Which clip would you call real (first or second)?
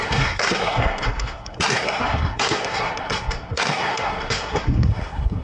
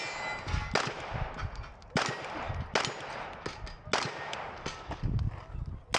second